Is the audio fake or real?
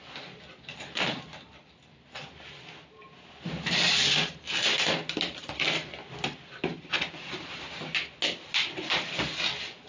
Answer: real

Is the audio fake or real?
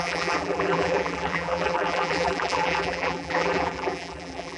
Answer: fake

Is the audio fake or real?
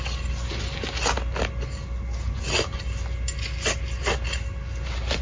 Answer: real